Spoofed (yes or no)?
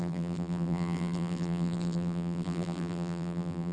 yes